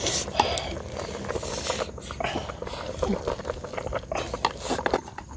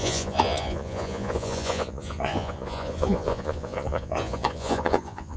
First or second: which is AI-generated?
second